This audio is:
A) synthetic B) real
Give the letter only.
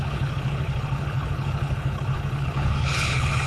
A